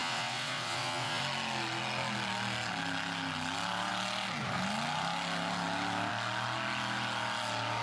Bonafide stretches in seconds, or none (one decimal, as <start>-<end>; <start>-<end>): 1.2-7.8